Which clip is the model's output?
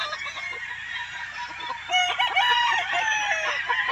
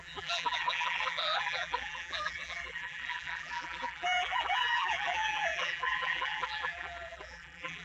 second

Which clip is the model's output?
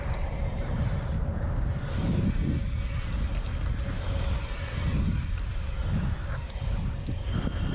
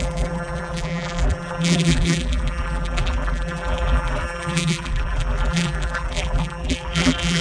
second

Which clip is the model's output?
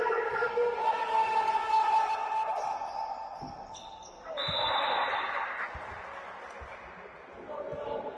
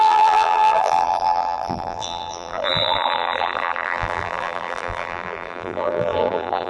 second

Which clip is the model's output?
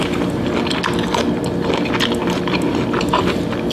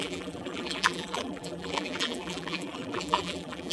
second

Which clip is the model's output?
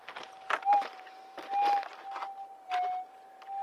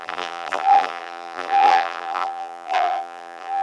second